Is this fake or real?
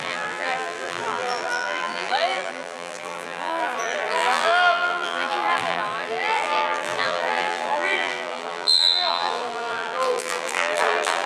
fake